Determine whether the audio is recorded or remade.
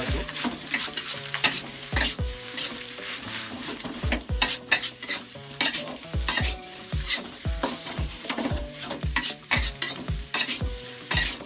remade